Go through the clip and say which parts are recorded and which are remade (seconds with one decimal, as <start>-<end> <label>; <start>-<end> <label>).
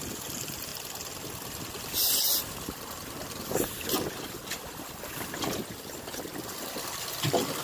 0.0-7.6 recorded